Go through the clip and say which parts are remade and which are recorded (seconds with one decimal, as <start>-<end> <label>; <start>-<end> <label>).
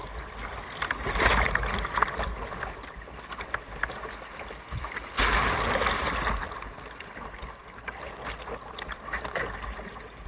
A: 0.0-10.3 recorded